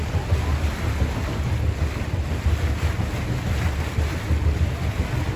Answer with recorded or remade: recorded